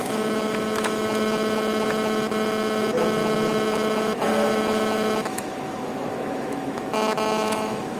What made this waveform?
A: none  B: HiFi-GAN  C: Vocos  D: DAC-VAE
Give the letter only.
D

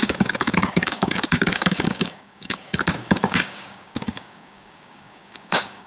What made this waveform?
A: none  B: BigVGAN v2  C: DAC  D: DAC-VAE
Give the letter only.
C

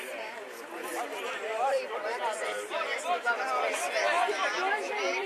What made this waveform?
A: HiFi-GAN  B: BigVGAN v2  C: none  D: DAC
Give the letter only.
B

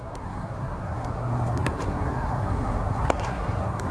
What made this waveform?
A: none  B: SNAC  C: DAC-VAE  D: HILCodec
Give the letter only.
B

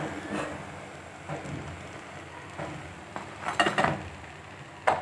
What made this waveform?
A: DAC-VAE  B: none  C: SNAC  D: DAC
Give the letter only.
B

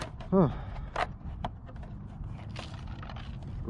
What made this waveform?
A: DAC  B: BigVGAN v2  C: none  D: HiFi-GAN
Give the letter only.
C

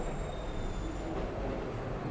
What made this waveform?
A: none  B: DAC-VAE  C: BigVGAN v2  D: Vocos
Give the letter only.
A